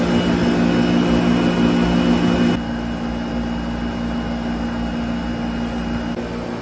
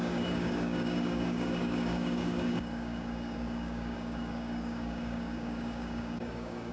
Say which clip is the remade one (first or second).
second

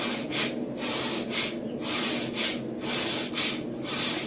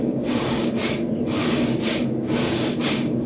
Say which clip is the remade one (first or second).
second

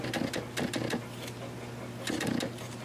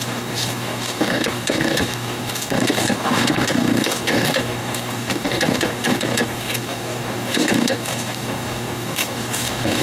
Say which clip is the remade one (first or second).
second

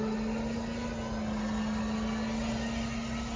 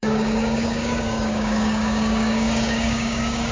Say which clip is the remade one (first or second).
second